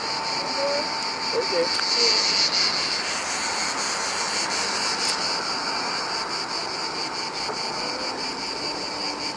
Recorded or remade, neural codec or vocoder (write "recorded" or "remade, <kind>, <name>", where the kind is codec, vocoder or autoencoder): recorded